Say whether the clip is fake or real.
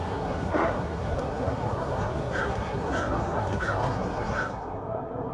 fake